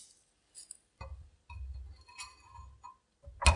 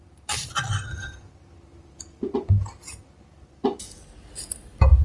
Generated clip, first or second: second